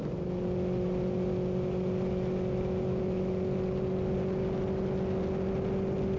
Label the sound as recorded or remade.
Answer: recorded